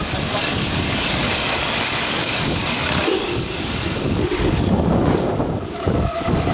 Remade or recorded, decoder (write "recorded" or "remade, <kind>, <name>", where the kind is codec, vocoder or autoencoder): remade, codec, DAC